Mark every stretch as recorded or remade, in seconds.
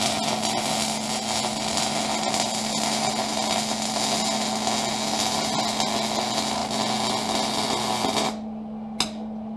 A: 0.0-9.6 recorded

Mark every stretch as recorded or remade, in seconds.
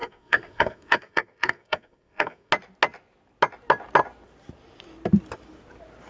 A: 0.0-2.5 remade; 2.5-6.1 recorded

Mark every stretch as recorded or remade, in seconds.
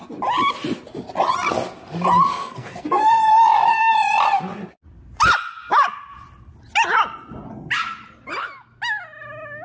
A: 0.0-2.3 recorded; 2.3-3.2 remade; 3.2-9.6 recorded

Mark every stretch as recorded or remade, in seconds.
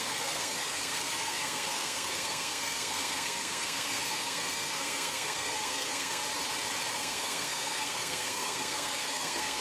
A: 0.0-6.2 remade; 6.2-6.9 recorded; 6.9-9.6 remade